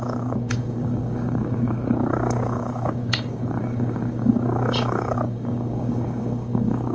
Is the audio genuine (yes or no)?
no